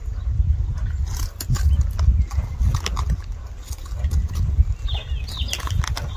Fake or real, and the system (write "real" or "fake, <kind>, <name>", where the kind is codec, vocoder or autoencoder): real